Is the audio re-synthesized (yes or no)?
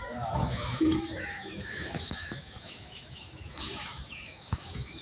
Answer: yes